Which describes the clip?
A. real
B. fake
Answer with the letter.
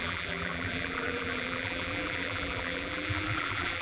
B